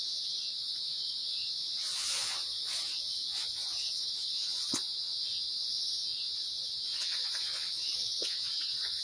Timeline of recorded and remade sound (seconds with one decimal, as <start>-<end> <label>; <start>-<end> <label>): 0.0-9.0 remade